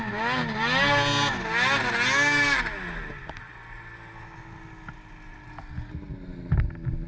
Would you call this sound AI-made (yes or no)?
no